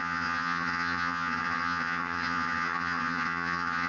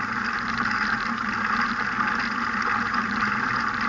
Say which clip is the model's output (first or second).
first